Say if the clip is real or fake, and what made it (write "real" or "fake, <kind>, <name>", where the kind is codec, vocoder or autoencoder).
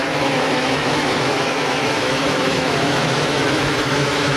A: fake, autoencoder, DAC-VAE